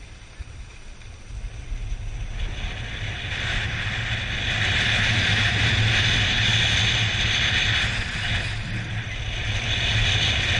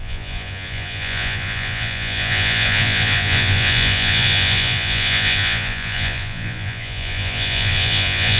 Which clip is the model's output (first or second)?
second